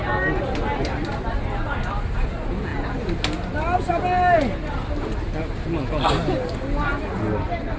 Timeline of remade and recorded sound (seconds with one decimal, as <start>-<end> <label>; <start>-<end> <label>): 0.0-7.8 recorded